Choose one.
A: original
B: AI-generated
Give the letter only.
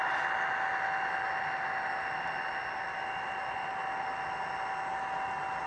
A